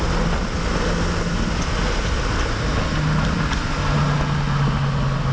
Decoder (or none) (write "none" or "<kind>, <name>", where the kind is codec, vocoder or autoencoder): none